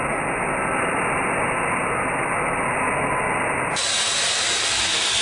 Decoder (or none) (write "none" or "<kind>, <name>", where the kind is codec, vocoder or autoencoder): none